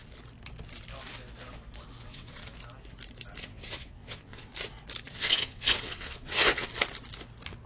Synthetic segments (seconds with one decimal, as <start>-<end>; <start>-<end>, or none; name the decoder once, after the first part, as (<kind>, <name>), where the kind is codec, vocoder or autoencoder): 2.0-2.4 (vocoder, WaveNeXt); 3.4-4.5; 5.1-6.7